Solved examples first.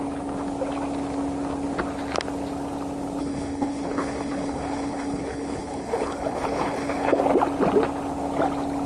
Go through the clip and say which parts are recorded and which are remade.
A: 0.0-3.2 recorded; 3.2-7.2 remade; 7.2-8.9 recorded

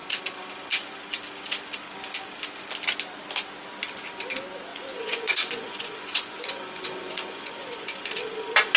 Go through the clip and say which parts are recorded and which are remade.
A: 0.0-4.7 recorded; 4.7-8.1 remade; 8.1-8.8 recorded

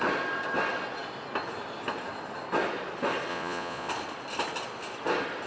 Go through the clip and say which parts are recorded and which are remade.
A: 0.0-3.3 recorded; 3.3-3.9 remade; 3.9-5.5 recorded

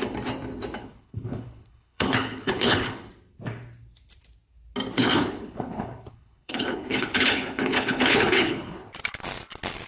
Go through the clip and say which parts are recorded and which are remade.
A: 0.0-0.8 recorded; 0.8-3.1 remade; 3.1-4.9 recorded; 4.9-8.9 remade; 8.9-9.9 recorded

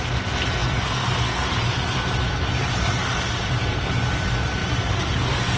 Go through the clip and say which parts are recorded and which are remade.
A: 0.0-5.6 recorded

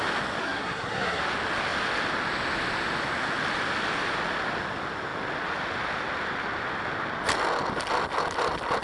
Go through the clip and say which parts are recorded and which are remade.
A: 0.0-0.4 recorded; 0.4-1.2 remade; 1.2-8.8 recorded